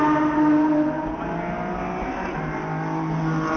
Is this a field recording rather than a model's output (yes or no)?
yes